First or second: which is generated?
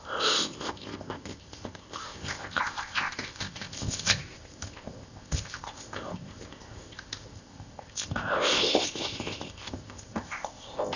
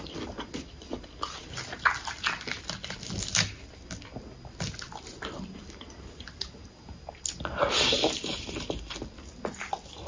first